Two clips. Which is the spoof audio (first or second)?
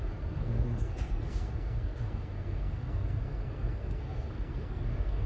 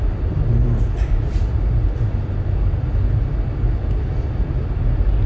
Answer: first